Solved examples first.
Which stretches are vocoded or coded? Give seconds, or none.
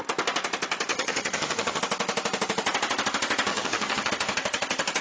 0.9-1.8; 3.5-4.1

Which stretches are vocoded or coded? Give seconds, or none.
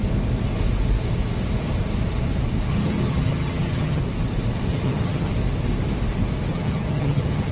2.7-4.0; 4.7-5.3; 6.5-7.5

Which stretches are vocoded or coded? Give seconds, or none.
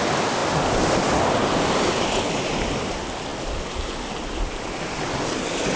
none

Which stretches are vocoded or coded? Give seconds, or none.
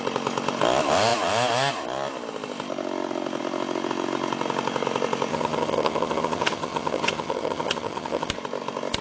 5.3-8.3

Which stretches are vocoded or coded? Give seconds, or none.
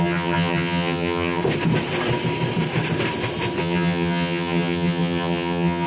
0.0-1.4; 3.6-5.9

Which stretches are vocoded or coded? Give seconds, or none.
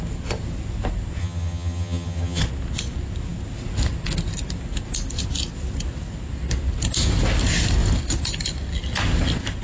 1.2-2.4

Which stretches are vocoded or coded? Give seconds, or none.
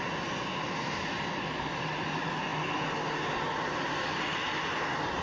none